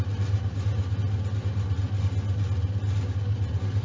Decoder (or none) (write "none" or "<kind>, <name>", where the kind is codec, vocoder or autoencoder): none